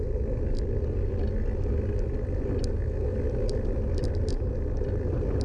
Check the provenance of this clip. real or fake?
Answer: real